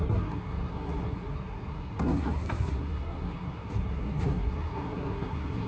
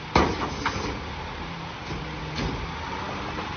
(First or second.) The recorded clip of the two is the second